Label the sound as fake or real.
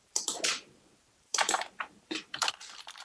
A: fake